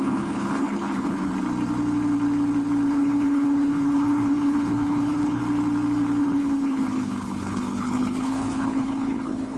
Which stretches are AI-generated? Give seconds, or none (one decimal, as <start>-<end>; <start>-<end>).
0.0-1.3; 2.9-5.4; 6.2-9.6